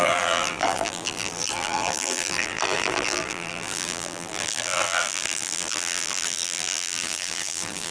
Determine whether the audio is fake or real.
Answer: fake